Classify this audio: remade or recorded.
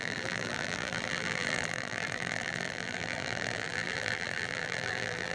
remade